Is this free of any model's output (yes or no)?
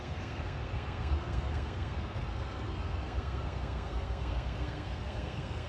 no